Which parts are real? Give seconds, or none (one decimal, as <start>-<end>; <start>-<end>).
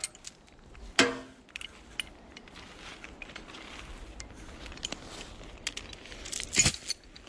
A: 0.0-7.3